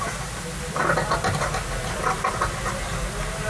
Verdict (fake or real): real